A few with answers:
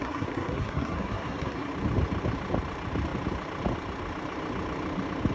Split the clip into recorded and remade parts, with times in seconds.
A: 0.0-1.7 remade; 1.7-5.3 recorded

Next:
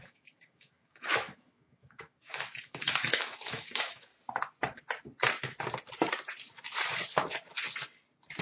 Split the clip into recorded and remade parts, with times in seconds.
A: 0.0-4.1 remade; 4.1-8.4 recorded

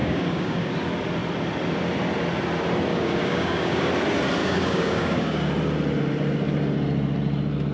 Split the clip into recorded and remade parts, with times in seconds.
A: 0.0-0.7 remade; 0.7-2.9 recorded; 2.9-3.9 remade; 3.9-4.4 recorded; 4.4-5.5 remade; 5.5-7.7 recorded